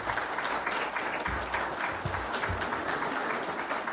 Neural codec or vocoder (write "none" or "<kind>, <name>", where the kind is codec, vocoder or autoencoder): none